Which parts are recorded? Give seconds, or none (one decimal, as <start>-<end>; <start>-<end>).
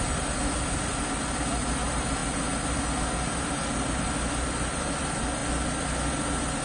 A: 0.0-6.6